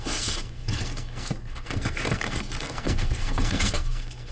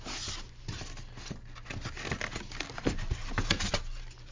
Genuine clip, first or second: second